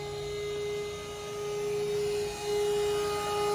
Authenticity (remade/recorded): recorded